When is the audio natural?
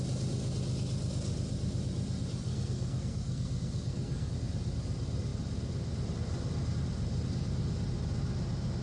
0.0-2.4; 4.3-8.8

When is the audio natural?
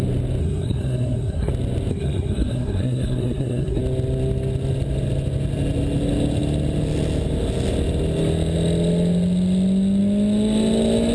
0.0-0.4; 1.5-1.9; 3.8-11.1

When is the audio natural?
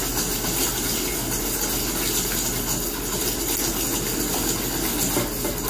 0.0-5.7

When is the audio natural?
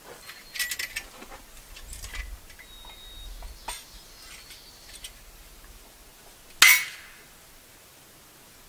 0.0-8.7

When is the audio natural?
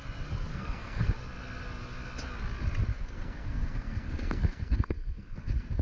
0.0-0.5; 1.1-2.9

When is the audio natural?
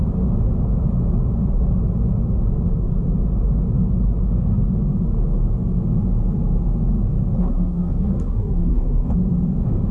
0.0-7.4; 9.1-9.9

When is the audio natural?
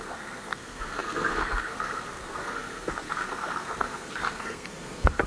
none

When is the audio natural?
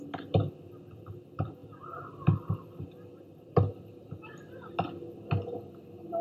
0.0-6.2